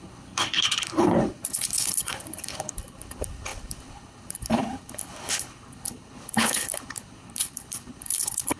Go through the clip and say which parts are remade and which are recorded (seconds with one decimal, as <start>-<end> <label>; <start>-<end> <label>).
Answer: 0.0-8.6 remade